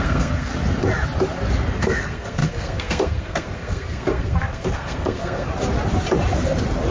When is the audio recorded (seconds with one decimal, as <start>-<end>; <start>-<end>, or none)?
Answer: 0.5-1.8; 5.5-6.9